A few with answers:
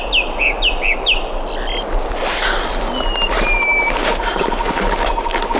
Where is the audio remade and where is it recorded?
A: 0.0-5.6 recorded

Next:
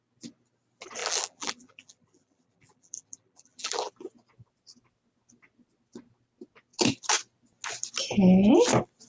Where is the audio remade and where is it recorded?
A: 0.0-1.0 recorded; 1.0-3.9 remade; 3.9-9.1 recorded